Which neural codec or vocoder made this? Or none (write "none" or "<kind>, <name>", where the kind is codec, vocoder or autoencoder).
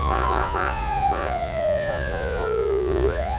vocoder, Vocos